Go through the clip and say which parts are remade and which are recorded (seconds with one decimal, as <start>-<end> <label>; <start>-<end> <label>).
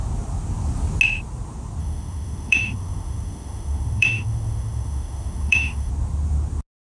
0.0-1.8 recorded; 1.8-5.9 remade; 5.9-6.8 recorded